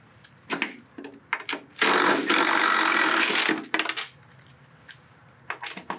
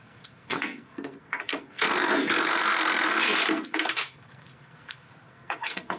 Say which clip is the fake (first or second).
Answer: second